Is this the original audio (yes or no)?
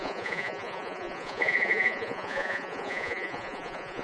no